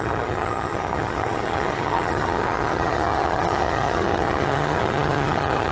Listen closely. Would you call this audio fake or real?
fake